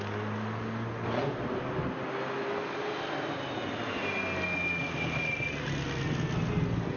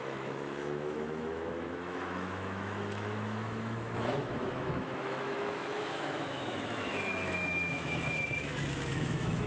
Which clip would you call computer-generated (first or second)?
second